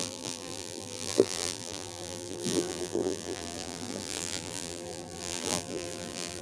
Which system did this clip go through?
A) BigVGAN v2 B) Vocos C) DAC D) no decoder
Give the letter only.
A